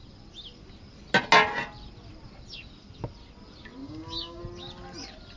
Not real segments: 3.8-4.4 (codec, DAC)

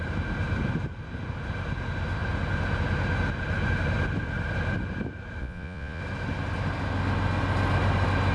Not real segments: 5.4-6.0 (vocoder, Vocos)

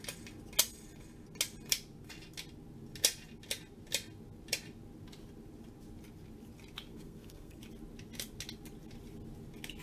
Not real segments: 6.9-7.6 (codec, SNAC)